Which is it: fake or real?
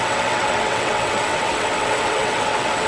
fake